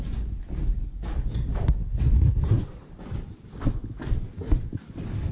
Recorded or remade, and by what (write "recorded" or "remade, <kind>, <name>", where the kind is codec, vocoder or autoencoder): recorded